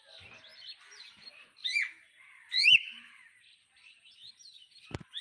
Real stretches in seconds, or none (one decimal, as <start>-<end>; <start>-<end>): 0.0-2.4; 4.3-5.2